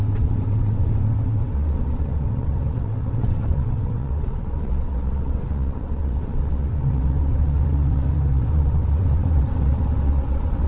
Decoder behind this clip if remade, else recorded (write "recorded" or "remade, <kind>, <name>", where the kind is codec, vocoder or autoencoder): remade, vocoder, WaveNeXt